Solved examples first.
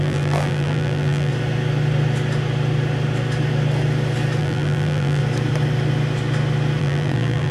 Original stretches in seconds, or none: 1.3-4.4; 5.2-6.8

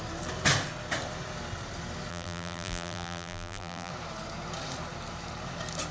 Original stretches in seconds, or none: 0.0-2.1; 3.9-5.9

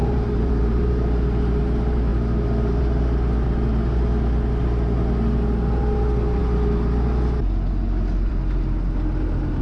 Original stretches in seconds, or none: 0.9-9.6